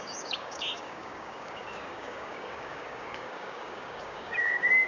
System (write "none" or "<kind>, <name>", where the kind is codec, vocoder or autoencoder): codec, DAC